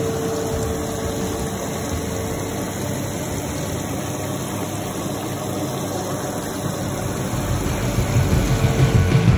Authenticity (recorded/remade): recorded